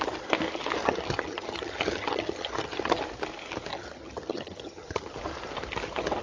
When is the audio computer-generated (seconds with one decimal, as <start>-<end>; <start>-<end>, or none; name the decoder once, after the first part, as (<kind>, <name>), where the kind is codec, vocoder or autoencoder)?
0.8-2.9 (vocoder, HiFi-GAN); 3.7-5.1